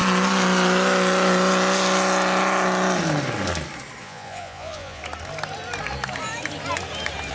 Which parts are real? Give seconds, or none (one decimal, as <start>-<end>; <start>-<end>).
0.0-4.0; 5.0-7.3